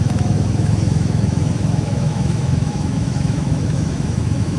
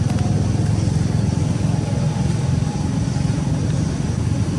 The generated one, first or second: first